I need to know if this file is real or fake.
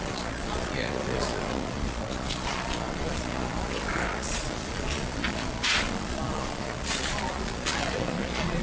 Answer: fake